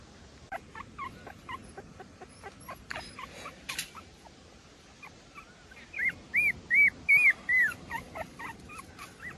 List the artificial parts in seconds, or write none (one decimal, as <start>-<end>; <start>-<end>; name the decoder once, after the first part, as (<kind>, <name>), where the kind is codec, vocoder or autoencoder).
none